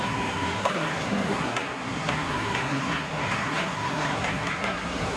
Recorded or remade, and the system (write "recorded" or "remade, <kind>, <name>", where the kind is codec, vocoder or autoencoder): remade, codec, SNAC